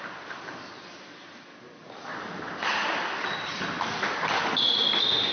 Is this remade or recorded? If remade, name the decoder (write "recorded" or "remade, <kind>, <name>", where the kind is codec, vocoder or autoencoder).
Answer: recorded